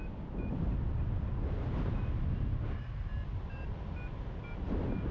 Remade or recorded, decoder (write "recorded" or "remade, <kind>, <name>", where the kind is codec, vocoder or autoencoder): recorded